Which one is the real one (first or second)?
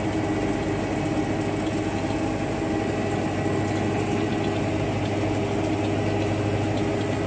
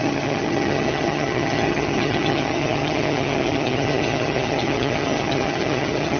first